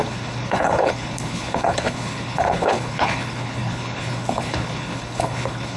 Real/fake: fake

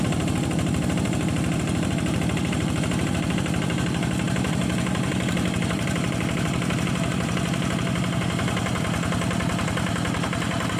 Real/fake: fake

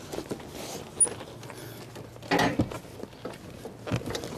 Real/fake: real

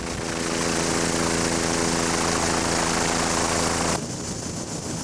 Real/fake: real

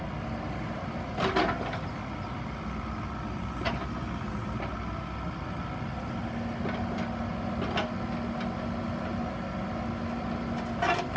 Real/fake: real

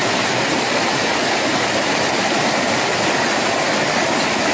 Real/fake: real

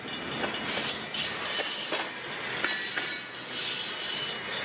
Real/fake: real